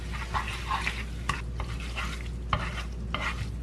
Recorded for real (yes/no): yes